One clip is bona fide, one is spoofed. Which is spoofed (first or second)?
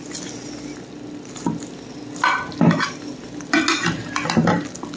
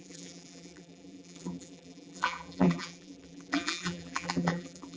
second